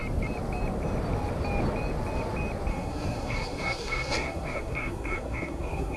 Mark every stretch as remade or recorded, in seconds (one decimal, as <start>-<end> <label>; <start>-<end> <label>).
0.0-2.7 recorded; 2.7-6.0 remade